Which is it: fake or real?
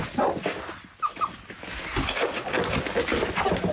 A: real